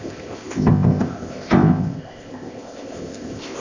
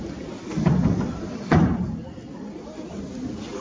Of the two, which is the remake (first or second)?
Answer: first